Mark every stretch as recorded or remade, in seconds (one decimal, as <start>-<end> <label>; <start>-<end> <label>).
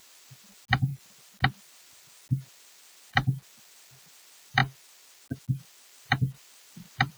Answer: 0.0-7.2 recorded